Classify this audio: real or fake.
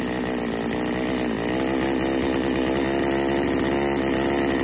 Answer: real